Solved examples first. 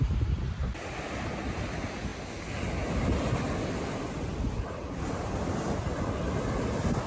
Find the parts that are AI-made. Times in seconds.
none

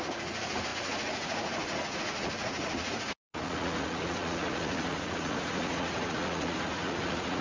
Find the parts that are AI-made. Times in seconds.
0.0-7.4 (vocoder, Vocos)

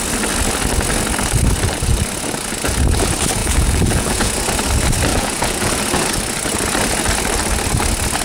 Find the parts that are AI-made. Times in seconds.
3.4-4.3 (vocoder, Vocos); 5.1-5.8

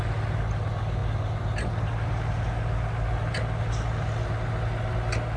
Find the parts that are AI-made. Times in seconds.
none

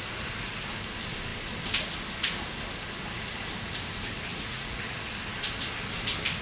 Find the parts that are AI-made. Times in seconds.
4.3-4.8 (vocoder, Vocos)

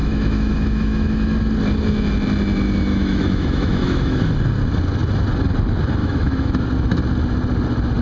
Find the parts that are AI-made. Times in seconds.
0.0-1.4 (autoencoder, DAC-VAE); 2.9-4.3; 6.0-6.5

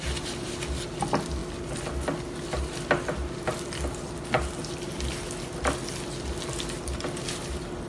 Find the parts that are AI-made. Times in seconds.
none

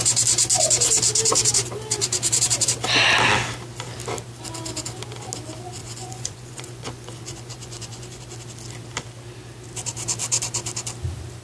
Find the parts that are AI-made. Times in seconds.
5.8-8.2 (vocoder, Vocos)